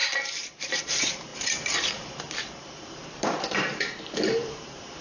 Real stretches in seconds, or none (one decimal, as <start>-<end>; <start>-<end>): 0.0-0.8